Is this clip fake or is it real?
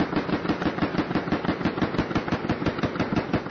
real